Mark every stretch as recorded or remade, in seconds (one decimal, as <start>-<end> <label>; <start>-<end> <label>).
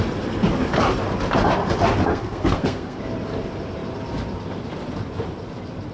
0.0-2.1 recorded; 2.1-3.0 remade; 3.0-5.9 recorded